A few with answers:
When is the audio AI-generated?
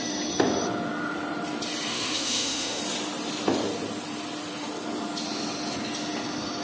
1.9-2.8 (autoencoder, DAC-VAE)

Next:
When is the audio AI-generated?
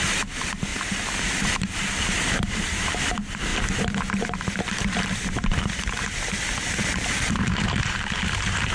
0.0-0.7 (vocoder, BigVGAN v2); 1.5-8.7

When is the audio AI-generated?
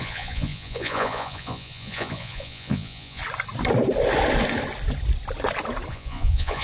0.0-3.2 (vocoder, Vocos); 5.9-6.6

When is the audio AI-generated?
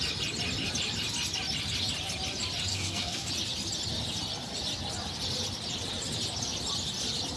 2.7-3.3 (codec, SNAC)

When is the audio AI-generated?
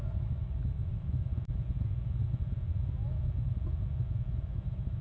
0.0-1.3 (autoencoder, DAC-VAE); 4.3-5.0